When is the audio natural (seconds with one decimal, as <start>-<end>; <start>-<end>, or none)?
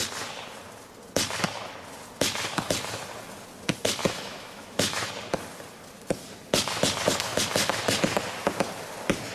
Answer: 0.0-4.0; 5.1-9.3